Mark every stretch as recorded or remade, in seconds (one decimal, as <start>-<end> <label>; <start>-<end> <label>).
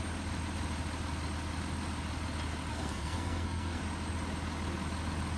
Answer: 0.0-2.7 recorded; 2.7-3.8 remade; 3.8-5.4 recorded